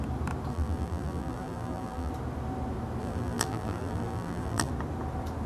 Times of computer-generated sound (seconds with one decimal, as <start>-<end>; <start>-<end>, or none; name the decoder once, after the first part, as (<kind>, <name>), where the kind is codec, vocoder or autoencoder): 0.5-2.1 (vocoder, BigVGAN v2); 3.0-4.7